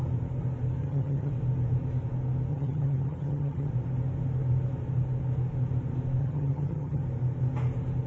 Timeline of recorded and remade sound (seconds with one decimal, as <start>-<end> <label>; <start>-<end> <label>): 0.0-0.8 recorded; 0.8-1.3 remade; 1.3-2.5 recorded; 2.5-3.7 remade; 3.7-6.2 recorded; 6.2-7.0 remade; 7.0-8.1 recorded